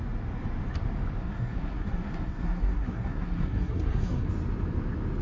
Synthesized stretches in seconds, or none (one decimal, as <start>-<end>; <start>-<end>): 1.2-4.3

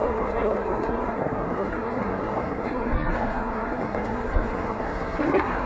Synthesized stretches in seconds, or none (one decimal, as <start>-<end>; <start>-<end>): 0.0-5.7

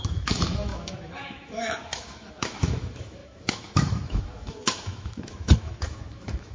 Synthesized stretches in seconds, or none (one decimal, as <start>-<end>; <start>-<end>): 0.0-6.5

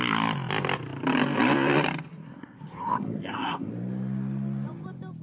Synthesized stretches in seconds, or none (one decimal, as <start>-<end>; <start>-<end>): 2.1-3.7

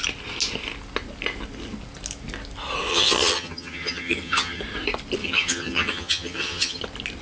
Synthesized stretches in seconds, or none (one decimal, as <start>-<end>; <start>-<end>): 2.9-4.6; 5.2-6.8

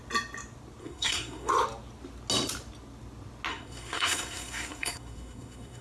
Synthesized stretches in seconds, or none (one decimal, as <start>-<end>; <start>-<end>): 0.8-1.5; 3.5-5.8